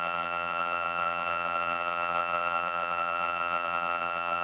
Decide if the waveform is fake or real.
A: fake